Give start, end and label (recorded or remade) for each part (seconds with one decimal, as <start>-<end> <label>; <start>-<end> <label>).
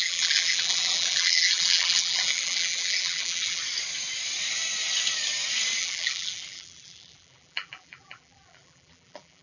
0.0-3.6 remade; 3.6-5.8 recorded; 5.8-9.4 remade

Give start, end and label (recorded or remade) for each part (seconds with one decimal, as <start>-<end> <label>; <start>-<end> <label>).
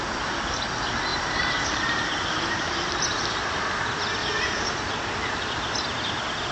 0.0-1.1 recorded; 1.1-3.6 remade; 3.6-4.2 recorded; 4.2-4.9 remade; 4.9-6.5 recorded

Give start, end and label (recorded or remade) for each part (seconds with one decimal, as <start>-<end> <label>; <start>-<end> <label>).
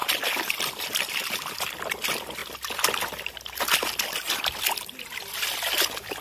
0.0-1.5 remade; 1.5-6.2 recorded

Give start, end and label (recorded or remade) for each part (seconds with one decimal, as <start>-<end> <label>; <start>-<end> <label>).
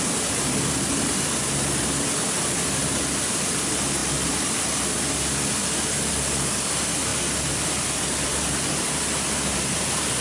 0.0-10.2 recorded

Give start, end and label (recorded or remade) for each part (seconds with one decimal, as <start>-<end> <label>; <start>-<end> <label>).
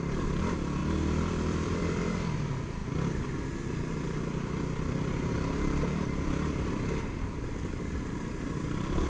0.0-0.8 remade; 0.8-1.3 recorded; 1.3-2.8 remade; 2.8-3.4 recorded; 3.4-9.1 remade